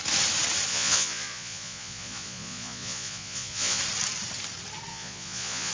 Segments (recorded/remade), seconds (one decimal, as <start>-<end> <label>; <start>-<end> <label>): 0.0-0.7 recorded; 0.7-3.8 remade; 3.8-4.9 recorded; 4.9-5.7 remade